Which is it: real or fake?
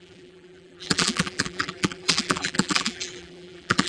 fake